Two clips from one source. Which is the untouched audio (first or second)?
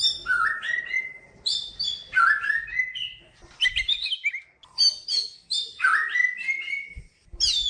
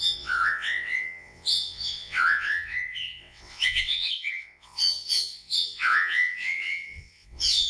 first